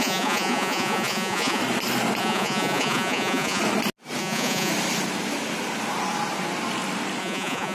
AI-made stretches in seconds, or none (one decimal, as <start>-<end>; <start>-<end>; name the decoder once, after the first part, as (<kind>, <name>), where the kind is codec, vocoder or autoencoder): 0.0-1.6 (vocoder, Vocos); 2.2-3.6; 4.2-4.7; 7.2-7.7